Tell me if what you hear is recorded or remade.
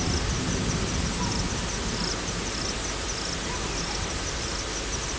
recorded